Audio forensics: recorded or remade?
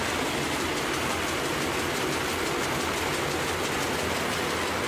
recorded